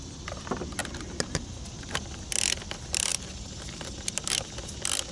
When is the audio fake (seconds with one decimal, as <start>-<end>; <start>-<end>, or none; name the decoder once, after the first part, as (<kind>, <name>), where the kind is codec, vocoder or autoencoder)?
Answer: none